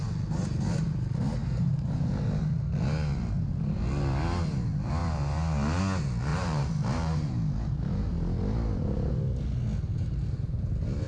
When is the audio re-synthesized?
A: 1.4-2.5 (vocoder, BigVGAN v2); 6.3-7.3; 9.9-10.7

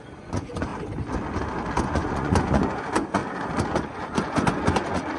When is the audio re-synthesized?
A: 0.0-0.7 (vocoder, Vocos); 1.8-3.2; 3.7-5.2

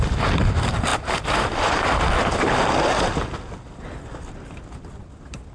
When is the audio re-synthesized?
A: 0.9-2.2 (vocoder, BigVGAN v2)